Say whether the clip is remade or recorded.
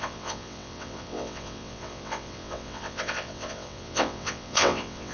remade